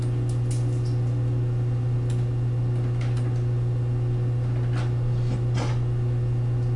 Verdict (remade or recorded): recorded